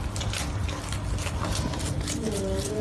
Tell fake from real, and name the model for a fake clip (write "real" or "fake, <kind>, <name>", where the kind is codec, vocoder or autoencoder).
real